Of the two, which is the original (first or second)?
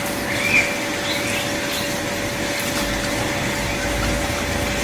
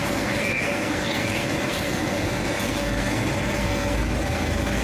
first